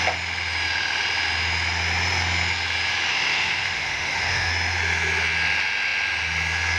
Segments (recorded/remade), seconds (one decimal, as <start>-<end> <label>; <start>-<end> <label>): 0.0-3.1 recorded; 3.1-4.5 remade; 4.5-6.8 recorded